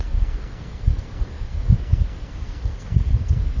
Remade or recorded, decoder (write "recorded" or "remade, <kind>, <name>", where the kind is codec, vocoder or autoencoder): remade, codec, SNAC